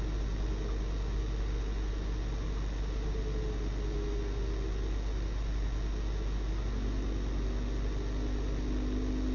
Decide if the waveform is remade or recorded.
recorded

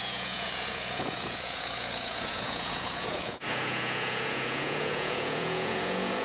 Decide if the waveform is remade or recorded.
remade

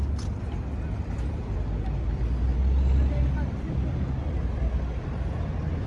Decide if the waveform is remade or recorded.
recorded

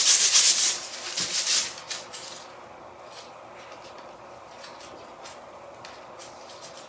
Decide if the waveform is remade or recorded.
recorded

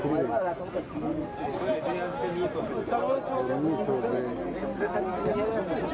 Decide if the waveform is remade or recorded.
recorded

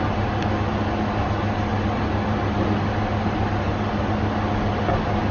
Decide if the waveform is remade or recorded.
recorded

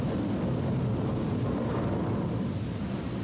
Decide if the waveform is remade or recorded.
recorded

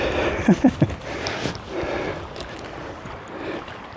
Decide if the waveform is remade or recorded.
recorded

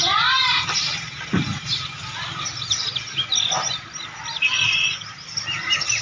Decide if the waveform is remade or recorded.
recorded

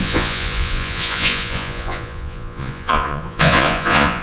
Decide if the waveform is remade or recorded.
remade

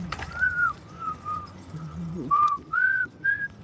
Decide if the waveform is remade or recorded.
remade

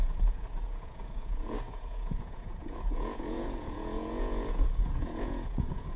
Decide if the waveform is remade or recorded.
remade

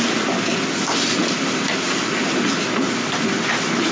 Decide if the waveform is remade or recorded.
recorded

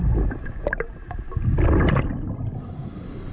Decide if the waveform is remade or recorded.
recorded